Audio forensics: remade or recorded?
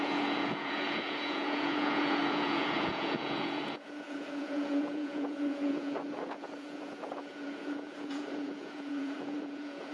remade